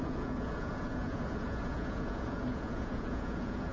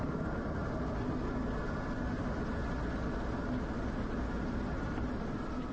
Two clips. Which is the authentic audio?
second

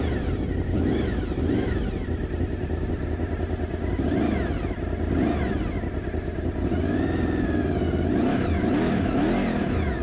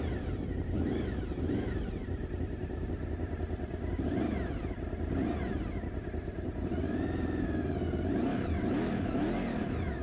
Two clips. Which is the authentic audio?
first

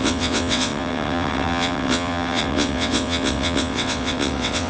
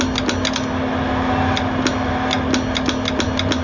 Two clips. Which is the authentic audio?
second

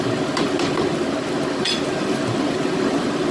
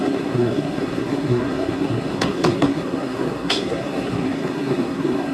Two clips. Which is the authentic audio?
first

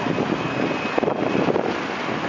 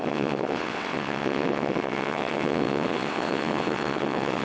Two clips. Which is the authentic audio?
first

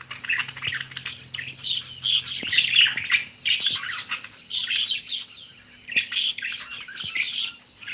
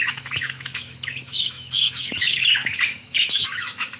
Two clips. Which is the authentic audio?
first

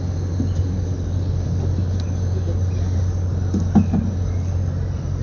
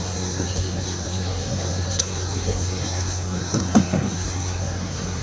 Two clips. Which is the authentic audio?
first